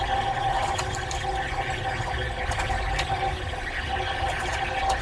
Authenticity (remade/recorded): recorded